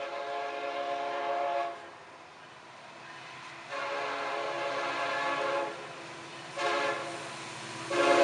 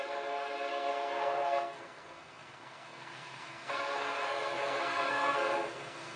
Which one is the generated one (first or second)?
second